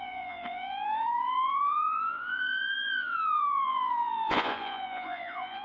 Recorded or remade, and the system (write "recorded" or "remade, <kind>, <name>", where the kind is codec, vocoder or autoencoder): remade, vocoder, Vocos